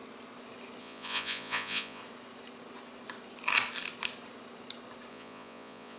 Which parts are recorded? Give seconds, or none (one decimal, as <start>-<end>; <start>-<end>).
0.0-0.8; 2.0-5.1